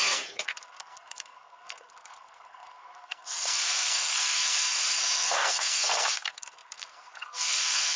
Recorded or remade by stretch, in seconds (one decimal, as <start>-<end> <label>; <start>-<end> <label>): 0.0-8.0 remade